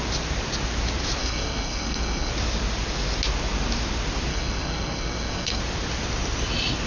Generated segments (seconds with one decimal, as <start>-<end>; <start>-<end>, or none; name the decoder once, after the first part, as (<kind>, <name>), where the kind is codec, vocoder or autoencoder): 1.2-2.3 (codec, SNAC); 4.3-5.6